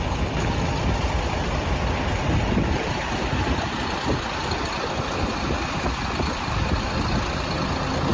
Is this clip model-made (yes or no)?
no